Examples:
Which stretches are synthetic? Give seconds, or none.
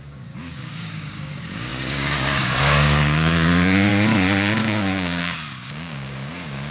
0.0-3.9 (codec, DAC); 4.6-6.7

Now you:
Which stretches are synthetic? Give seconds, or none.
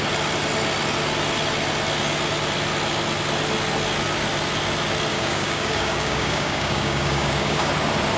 5.1-7.7 (codec, DAC)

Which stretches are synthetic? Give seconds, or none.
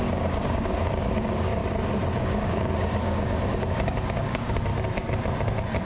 0.0-1.6 (codec, DAC); 2.2-4.7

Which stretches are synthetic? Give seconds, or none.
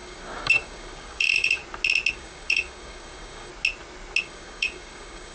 0.0-1.6 (codec, DAC); 2.1-3.5; 4.2-5.3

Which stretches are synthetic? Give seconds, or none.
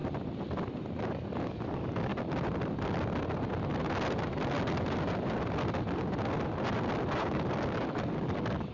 1.0-2.1 (codec, DAC); 7.2-8.7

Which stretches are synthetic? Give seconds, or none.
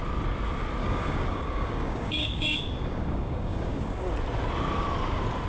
0.8-4.1 (codec, DAC)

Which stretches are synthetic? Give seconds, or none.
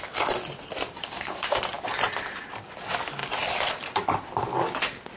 1.0-1.6 (codec, DAC)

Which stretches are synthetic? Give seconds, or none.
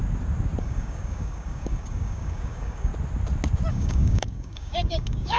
0.6-2.9 (codec, DAC); 3.7-5.4